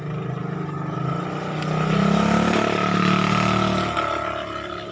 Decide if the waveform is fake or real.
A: real